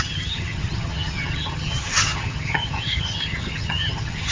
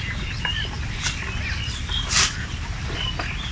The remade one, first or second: first